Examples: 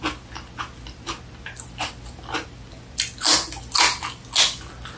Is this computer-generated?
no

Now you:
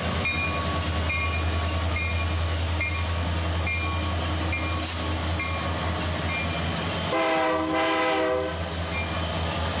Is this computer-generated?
no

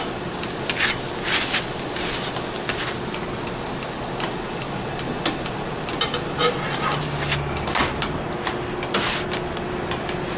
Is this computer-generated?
no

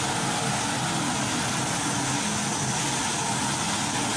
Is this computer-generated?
no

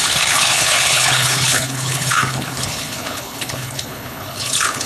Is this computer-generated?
yes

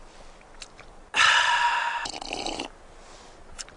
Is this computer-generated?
no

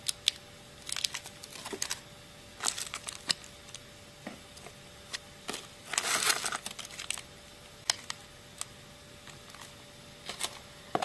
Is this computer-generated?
no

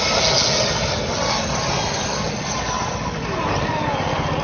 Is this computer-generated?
no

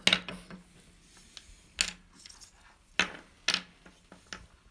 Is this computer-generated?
no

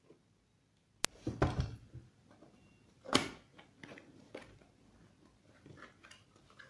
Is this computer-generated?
no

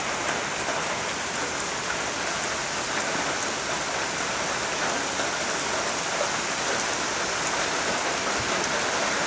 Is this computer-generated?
no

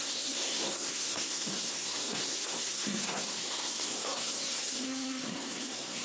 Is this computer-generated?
yes